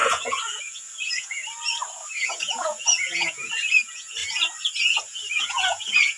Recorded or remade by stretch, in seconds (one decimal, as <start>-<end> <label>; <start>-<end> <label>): 0.0-1.4 remade; 1.4-2.0 recorded; 2.0-4.2 remade; 4.2-4.8 recorded; 4.8-6.2 remade